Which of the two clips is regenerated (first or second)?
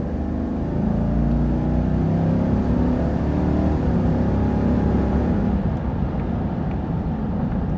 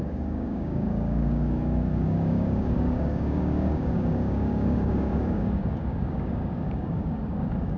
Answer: second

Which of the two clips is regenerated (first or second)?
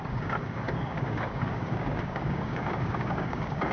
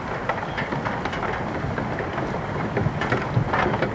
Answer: first